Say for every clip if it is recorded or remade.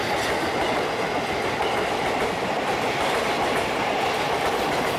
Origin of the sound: recorded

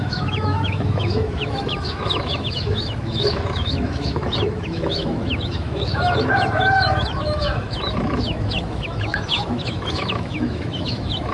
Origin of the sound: remade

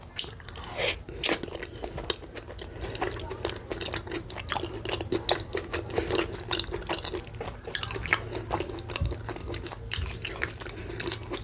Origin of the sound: recorded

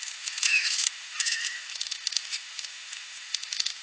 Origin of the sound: remade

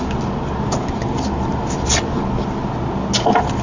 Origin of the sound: recorded